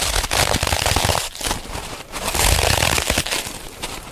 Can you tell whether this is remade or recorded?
recorded